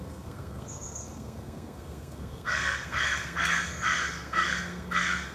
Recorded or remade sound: remade